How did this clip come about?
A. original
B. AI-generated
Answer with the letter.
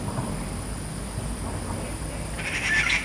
A